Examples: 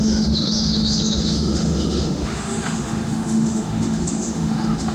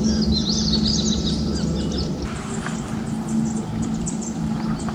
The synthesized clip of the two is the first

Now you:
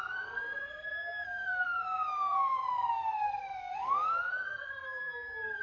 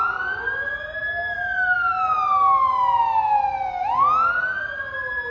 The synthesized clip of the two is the first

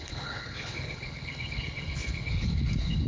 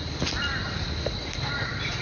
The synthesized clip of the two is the first